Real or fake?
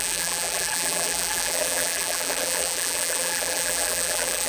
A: fake